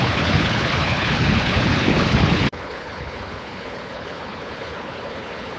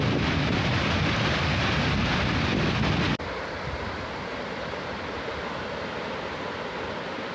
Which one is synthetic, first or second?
first